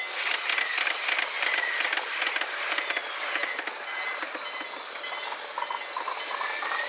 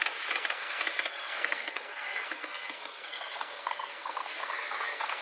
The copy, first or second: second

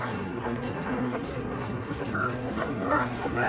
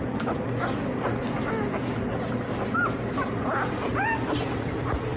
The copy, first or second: first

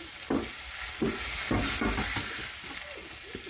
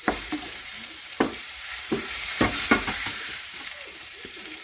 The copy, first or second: second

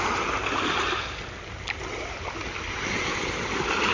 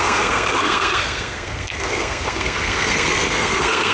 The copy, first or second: second